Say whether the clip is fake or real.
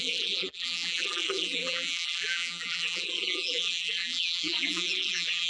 fake